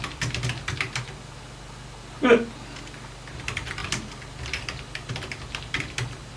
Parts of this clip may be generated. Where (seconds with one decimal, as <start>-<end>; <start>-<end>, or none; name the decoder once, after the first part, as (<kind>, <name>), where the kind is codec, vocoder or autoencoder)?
none